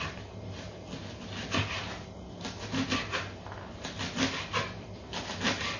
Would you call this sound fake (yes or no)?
no